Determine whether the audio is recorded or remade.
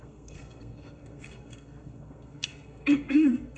remade